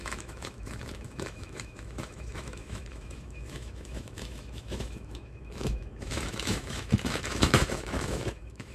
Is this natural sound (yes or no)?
no